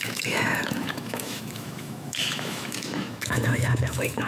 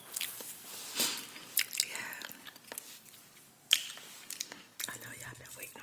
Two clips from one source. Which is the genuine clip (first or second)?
second